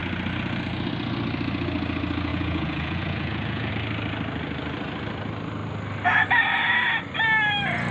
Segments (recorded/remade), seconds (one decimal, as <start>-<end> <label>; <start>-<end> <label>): 0.0-2.3 recorded; 2.3-3.7 remade; 3.7-7.9 recorded